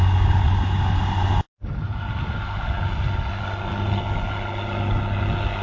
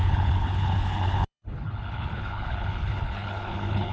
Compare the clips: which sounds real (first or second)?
first